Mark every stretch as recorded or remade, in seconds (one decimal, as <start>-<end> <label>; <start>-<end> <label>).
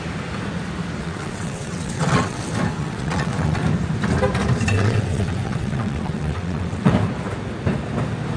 0.0-1.0 recorded; 1.0-2.4 remade; 2.4-2.8 recorded; 2.8-3.6 remade; 3.6-4.7 recorded; 4.7-6.9 remade; 6.9-8.4 recorded